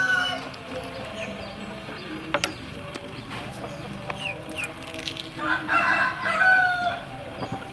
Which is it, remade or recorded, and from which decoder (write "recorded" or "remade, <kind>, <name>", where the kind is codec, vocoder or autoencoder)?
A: recorded